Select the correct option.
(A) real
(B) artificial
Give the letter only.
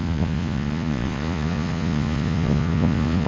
B